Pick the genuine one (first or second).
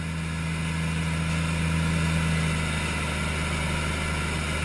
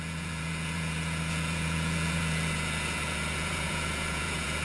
first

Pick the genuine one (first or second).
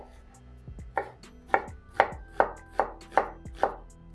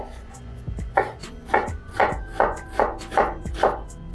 first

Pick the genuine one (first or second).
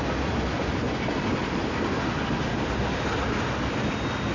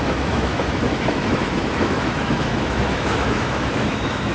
first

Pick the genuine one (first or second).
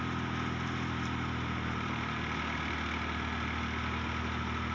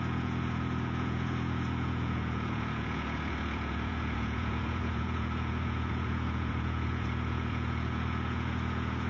first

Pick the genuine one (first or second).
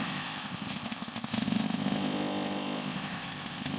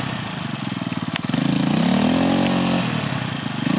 second